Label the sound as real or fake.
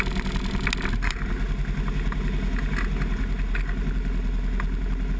real